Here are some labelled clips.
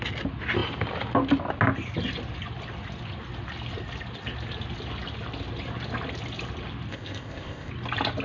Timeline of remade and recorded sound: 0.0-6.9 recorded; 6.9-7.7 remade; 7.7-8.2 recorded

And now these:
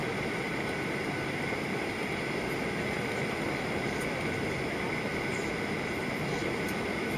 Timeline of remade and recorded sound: 0.0-7.2 recorded

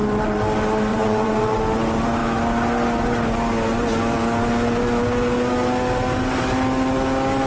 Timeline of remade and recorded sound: 0.0-0.9 recorded; 0.9-1.6 remade; 1.6-7.5 recorded

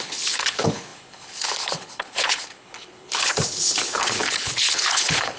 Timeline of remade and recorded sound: 0.0-5.4 remade

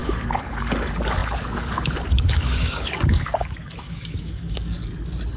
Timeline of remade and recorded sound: 0.0-4.8 remade; 4.8-5.4 recorded

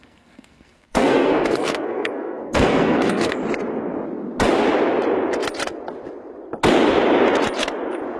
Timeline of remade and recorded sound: 0.0-3.4 remade; 3.4-8.2 recorded

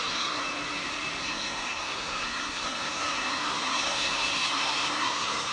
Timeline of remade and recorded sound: 0.0-0.4 remade; 0.4-1.2 recorded; 1.2-5.5 remade